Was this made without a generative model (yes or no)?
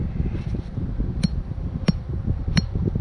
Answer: yes